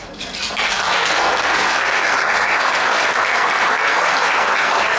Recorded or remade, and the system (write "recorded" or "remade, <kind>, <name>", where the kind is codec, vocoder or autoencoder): remade, codec, SNAC